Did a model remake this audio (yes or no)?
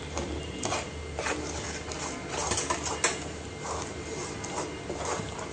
no